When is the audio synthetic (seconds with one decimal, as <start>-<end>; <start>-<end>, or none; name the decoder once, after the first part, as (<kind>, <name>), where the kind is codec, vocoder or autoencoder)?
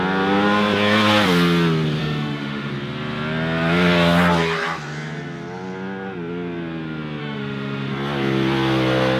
2.0-2.7 (autoencoder, DAC-VAE); 7.2-7.9